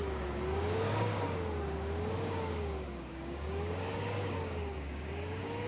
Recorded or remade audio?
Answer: remade